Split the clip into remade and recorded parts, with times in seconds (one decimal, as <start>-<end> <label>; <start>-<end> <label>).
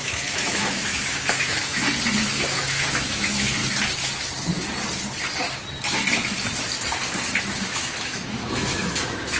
0.0-1.8 remade; 1.8-2.5 recorded; 2.5-3.6 remade; 3.6-7.4 recorded; 7.4-9.4 remade